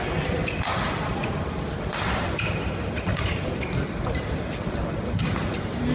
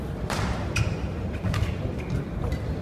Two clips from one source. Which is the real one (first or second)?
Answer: second